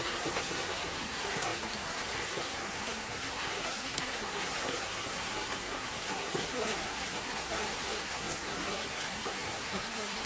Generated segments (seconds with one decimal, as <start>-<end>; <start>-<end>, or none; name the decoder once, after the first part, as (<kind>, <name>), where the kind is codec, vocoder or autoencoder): 0.0-10.3 (codec, SNAC)